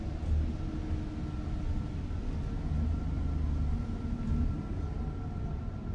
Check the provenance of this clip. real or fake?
real